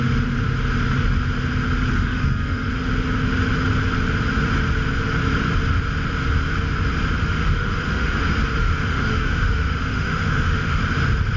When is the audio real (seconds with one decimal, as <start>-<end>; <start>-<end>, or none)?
0.0-1.9; 2.7-7.2; 8.2-8.6; 10.8-11.4